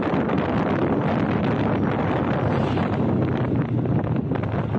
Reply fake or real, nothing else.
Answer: real